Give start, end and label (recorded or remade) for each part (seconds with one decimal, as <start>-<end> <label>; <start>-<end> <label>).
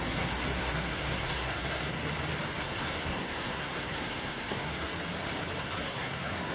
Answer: 0.0-2.0 remade; 2.0-2.6 recorded; 2.6-4.9 remade; 4.9-5.6 recorded; 5.6-6.5 remade